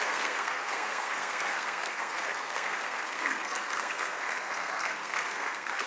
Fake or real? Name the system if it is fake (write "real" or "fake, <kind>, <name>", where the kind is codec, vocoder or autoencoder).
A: fake, codec, SNAC